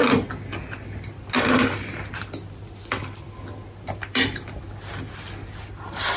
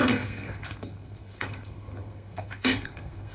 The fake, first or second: second